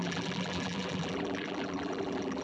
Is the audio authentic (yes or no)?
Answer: no